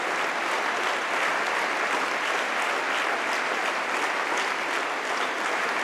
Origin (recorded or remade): recorded